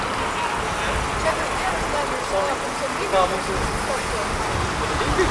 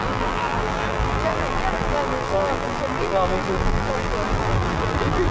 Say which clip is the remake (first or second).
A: second